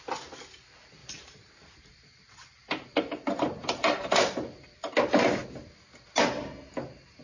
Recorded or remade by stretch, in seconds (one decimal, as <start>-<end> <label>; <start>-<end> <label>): 0.0-1.0 recorded; 1.0-4.9 remade; 4.9-7.2 recorded